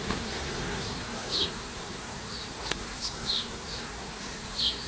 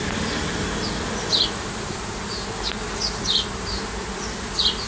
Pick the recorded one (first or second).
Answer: second